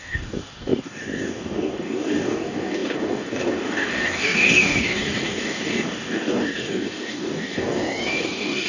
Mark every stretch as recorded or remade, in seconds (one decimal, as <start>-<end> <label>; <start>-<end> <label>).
0.0-8.7 remade